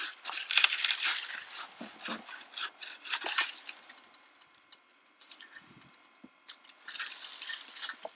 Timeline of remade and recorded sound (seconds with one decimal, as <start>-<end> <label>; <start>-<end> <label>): 0.0-4.9 recorded; 4.9-5.9 remade; 5.9-8.1 recorded